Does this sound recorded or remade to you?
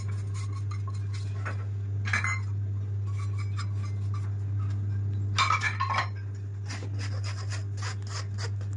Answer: recorded